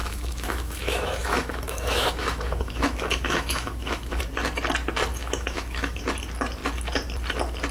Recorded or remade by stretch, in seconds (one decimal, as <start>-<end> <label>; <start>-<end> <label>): 0.0-4.2 remade; 4.2-5.2 recorded; 5.2-6.0 remade; 6.0-7.7 recorded